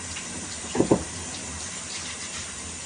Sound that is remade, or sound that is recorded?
remade